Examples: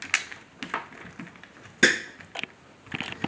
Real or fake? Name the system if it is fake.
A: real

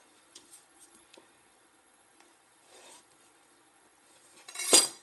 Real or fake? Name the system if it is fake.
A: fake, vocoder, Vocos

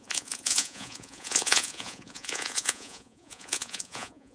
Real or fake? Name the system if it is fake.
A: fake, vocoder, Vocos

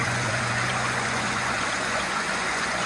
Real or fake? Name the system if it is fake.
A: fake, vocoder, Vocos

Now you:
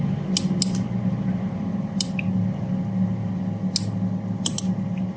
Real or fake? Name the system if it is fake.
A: real